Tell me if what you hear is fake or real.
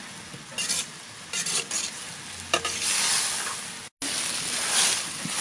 real